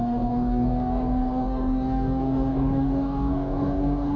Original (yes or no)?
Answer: no